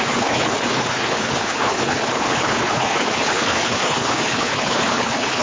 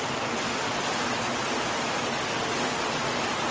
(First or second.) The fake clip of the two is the first